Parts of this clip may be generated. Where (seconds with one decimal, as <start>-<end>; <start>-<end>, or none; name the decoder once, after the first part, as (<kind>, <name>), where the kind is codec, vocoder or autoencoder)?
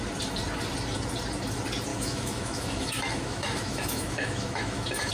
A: 1.9-5.1 (autoencoder, DAC-VAE)